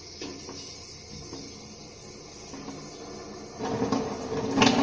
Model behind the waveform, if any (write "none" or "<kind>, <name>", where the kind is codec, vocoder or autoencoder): none